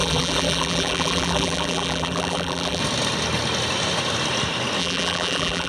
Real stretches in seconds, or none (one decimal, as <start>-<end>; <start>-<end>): 2.8-4.8